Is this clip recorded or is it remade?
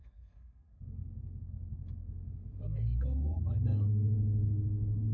remade